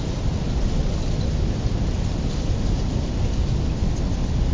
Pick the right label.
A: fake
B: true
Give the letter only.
B